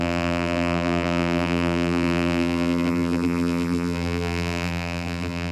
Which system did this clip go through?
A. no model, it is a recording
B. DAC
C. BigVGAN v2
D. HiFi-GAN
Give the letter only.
C